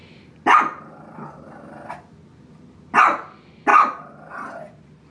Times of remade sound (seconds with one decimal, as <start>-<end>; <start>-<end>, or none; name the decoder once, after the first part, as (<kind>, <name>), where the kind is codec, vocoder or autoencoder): none